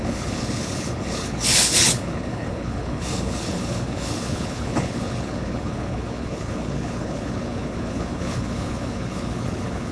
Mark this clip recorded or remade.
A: remade